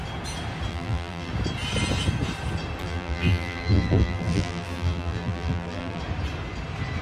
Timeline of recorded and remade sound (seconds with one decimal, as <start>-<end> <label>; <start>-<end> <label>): 0.0-0.7 recorded; 0.7-1.3 remade; 1.3-2.8 recorded; 2.8-6.0 remade; 6.0-7.0 recorded